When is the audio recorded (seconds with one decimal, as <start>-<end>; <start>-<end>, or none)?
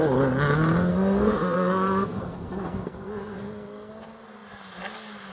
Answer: 0.0-0.9; 3.9-5.3